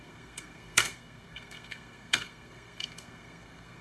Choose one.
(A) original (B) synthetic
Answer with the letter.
B